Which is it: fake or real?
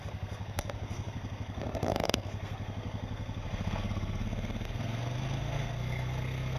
fake